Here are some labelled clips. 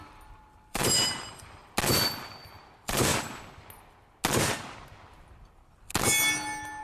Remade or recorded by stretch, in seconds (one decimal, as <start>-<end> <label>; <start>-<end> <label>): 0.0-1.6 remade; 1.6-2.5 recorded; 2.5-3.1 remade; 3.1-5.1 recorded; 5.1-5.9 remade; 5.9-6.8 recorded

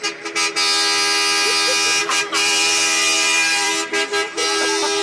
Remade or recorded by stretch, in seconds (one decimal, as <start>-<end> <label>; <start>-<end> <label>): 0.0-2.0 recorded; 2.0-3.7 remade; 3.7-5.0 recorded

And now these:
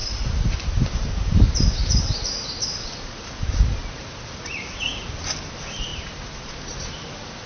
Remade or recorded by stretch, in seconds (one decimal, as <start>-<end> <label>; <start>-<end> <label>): 0.0-3.3 remade; 3.3-5.9 recorded; 5.9-6.6 remade; 6.6-7.5 recorded

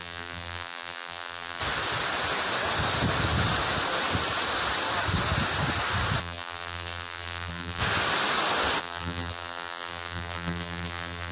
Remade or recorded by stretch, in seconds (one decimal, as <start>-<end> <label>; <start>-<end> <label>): 0.0-1.6 remade; 1.6-6.2 recorded; 6.2-7.8 remade; 7.8-8.8 recorded; 8.8-11.3 remade

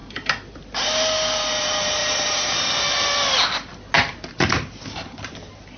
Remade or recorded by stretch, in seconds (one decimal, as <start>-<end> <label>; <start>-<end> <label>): 0.0-2.0 recorded; 2.0-2.7 remade; 2.7-5.8 recorded